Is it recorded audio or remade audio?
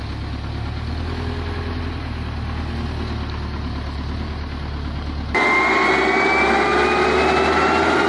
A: recorded